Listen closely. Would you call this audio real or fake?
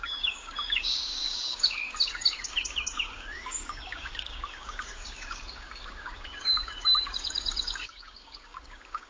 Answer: fake